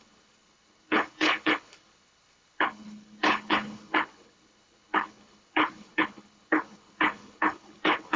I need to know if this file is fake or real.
fake